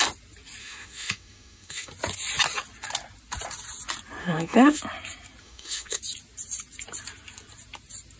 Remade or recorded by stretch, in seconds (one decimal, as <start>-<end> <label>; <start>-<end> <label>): 0.0-0.6 recorded; 0.6-1.9 remade; 1.9-4.2 recorded; 4.2-4.8 remade; 4.8-5.4 recorded; 5.4-6.0 remade; 6.0-8.2 recorded